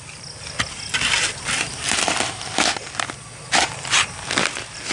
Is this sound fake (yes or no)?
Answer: no